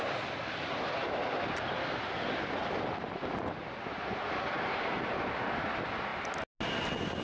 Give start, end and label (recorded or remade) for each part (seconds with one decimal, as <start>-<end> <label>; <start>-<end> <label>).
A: 0.0-7.2 recorded